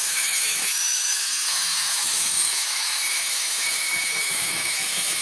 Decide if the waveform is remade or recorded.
remade